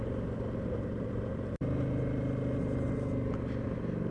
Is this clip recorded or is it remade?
recorded